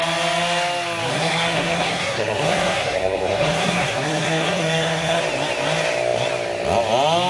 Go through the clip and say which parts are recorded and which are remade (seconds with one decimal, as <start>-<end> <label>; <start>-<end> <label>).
0.0-1.1 recorded; 1.1-5.2 remade; 5.2-7.3 recorded